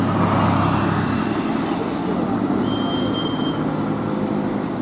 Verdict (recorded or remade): recorded